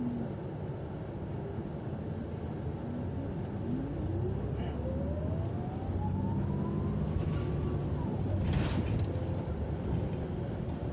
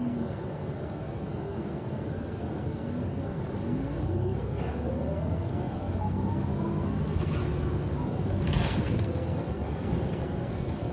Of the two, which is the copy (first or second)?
second